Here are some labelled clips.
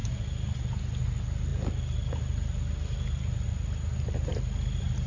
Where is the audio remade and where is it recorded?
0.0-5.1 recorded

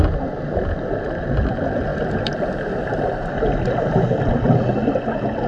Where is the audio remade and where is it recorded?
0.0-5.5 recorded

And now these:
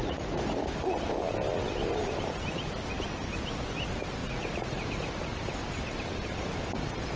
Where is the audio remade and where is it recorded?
0.0-0.6 remade; 0.6-4.2 recorded; 4.2-5.1 remade; 5.1-7.2 recorded

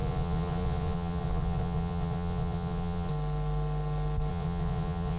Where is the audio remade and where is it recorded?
0.0-3.1 remade; 3.1-4.3 recorded; 4.3-5.2 remade

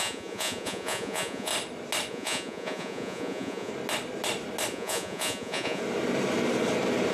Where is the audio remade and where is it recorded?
0.0-1.5 remade; 1.5-2.1 recorded; 2.1-3.7 remade; 3.7-4.7 recorded; 4.7-5.8 remade; 5.8-7.1 recorded

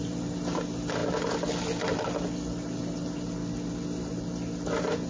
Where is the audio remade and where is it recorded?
0.0-5.1 recorded